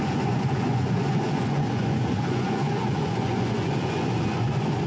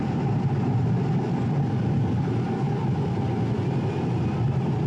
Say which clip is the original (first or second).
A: second